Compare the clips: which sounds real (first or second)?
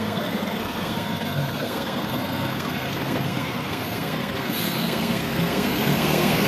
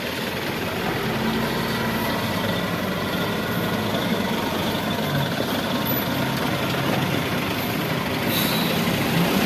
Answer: second